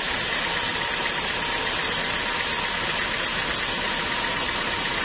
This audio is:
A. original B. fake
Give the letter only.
A